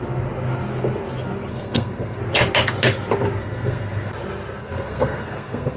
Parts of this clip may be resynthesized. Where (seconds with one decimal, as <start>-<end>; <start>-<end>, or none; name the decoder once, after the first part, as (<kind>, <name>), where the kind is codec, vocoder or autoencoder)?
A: 1.5-2.2 (codec, SNAC); 3.4-4.1; 4.6-5.8